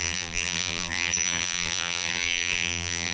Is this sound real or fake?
fake